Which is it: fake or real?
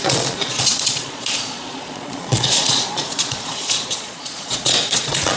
fake